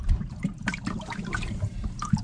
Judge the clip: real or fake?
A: fake